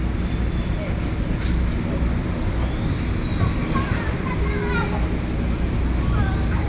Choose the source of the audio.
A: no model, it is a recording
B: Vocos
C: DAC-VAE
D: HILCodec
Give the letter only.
A